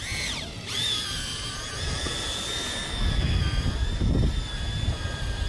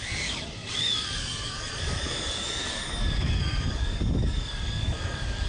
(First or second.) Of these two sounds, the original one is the first